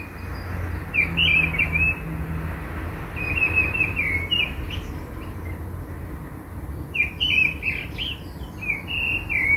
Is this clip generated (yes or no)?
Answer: no